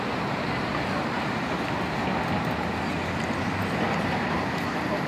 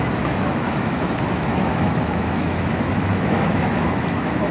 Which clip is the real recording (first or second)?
first